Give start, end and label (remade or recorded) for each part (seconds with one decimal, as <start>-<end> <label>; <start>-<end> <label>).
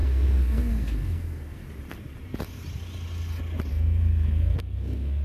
0.0-1.6 remade; 1.6-3.7 recorded; 3.7-5.2 remade